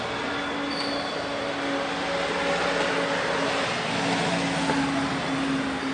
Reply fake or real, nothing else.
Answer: real